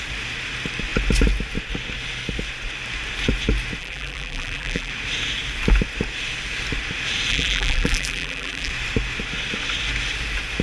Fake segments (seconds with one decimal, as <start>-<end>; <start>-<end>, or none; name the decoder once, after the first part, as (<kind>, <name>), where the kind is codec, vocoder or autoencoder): 3.8-4.9 (vocoder, BigVGAN v2); 7.3-8.7